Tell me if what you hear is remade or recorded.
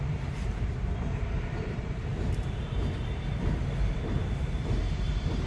remade